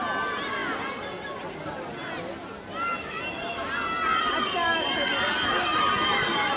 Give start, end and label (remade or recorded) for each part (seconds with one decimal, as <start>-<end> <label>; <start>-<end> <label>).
0.0-6.6 recorded